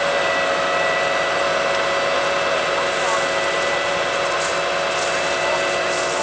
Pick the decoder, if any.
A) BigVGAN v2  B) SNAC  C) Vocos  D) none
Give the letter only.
D